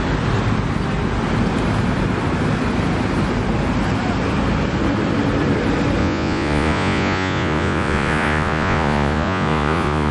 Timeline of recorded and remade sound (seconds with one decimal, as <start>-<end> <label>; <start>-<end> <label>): 0.0-6.0 recorded; 6.0-10.1 remade